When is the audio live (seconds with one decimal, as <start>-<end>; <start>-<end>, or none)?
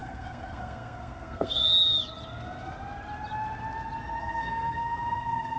1.6-4.2